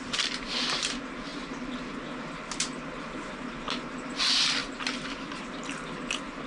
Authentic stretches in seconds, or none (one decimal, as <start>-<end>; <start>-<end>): 0.0-6.5